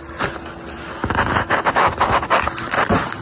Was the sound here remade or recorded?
recorded